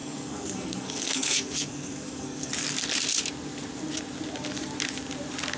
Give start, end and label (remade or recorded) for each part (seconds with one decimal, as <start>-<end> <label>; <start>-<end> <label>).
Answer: 0.0-2.5 remade; 2.5-5.6 recorded